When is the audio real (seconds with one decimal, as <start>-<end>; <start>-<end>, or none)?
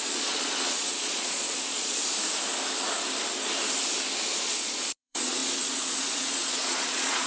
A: 2.0-4.4